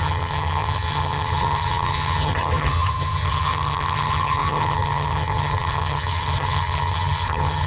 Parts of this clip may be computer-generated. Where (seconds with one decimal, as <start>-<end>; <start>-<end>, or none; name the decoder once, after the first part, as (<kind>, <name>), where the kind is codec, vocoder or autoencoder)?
0.0-7.7 (vocoder, HiFi-GAN)

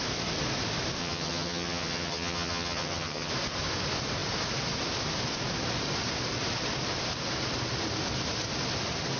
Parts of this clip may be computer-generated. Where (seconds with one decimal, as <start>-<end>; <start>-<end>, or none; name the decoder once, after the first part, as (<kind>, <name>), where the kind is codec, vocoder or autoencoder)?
1.0-3.3 (vocoder, HiFi-GAN)

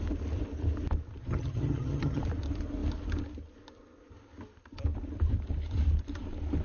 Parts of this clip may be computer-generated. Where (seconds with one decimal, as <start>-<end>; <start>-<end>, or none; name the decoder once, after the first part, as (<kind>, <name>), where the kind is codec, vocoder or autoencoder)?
1.2-2.2 (vocoder, HiFi-GAN)

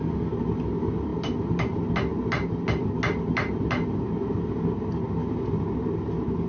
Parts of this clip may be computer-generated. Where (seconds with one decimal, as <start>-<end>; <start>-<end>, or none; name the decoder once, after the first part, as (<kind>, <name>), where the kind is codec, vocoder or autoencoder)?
none

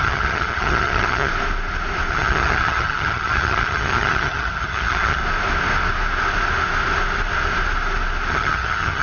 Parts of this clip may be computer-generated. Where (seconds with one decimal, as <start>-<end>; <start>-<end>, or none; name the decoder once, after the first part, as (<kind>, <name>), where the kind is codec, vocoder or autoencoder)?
0.0-1.3 (vocoder, HiFi-GAN); 2.1-5.2; 8.3-9.0

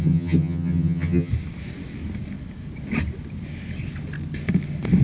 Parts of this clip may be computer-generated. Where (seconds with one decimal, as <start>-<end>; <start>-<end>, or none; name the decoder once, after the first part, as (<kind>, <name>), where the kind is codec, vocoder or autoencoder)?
0.0-1.3 (vocoder, HiFi-GAN)